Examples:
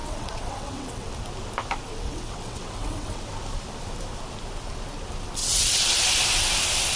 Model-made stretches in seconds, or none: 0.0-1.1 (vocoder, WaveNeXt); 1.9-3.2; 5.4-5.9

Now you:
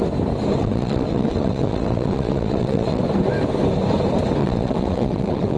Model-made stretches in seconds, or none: 0.6-3.0 (vocoder, WaveNeXt); 4.4-5.6

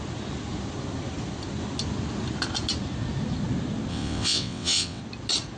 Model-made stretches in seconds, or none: 3.9-5.0 (vocoder, WaveNeXt)

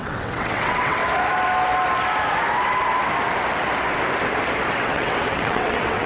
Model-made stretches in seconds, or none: 0.0-1.0 (vocoder, WaveNeXt); 4.7-6.1

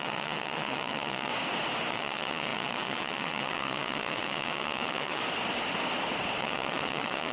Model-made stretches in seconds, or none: 0.0-1.3 (vocoder, WaveNeXt); 1.9-5.2; 6.4-7.3

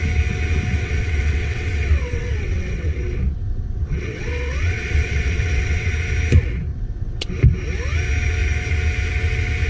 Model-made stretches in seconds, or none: 0.7-5.9 (vocoder, WaveNeXt); 6.7-7.3